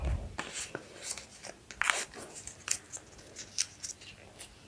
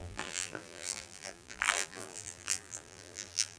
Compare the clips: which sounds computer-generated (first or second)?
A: second